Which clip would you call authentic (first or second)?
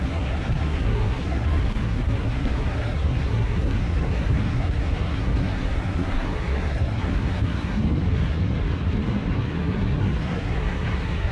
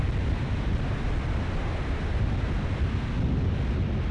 second